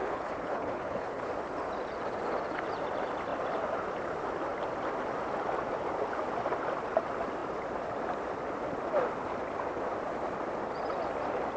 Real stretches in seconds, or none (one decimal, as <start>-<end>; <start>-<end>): 1.3-11.6

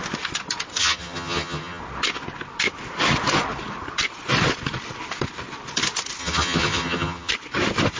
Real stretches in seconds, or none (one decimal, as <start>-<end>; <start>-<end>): 0.0-0.8; 1.8-6.2; 7.3-8.0

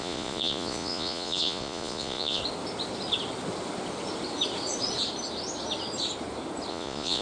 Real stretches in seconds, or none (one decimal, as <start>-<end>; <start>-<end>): 2.4-6.7

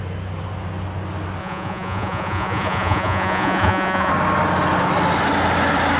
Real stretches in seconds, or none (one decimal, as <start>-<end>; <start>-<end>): 0.0-1.4; 4.1-6.0

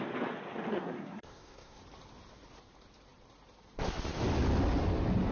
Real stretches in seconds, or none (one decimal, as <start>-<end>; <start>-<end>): 0.0-0.7; 1.8-5.3

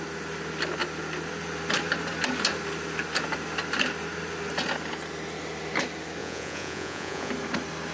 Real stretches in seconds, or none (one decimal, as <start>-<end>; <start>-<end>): 0.0-6.2; 7.3-7.9